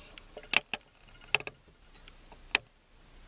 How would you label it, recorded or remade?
recorded